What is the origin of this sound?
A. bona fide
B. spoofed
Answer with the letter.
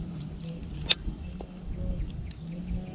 A